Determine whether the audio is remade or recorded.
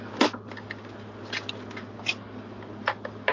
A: recorded